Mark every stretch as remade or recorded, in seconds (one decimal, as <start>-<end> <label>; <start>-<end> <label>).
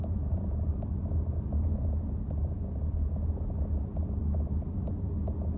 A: 0.0-5.6 recorded